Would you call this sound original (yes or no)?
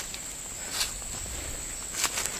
yes